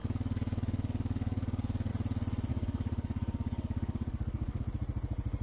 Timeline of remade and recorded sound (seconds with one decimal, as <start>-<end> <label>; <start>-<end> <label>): 0.0-1.9 remade; 1.9-2.5 recorded; 2.5-4.6 remade; 4.6-5.4 recorded